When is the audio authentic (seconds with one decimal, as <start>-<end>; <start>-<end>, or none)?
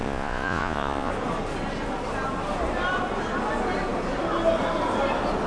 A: 1.1-5.5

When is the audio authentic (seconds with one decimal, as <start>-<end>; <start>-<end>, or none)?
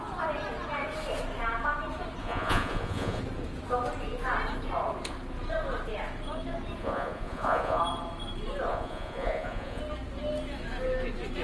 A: 0.0-2.2; 3.2-6.8; 7.8-8.7; 9.8-11.4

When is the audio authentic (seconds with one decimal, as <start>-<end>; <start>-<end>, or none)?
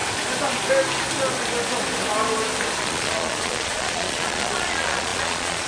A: 0.0-2.8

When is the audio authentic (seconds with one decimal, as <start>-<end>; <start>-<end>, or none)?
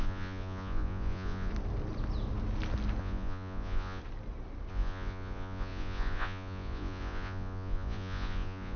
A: 1.5-3.0; 4.0-4.7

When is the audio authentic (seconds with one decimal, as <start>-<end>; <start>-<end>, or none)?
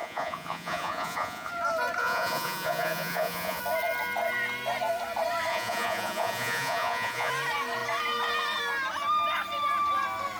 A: 1.5-2.0; 3.6-5.5; 7.3-10.4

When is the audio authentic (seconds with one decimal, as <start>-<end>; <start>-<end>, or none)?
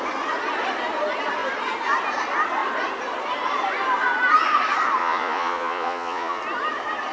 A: 0.0-5.0; 6.4-7.1